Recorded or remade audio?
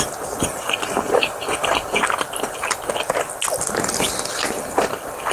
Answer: recorded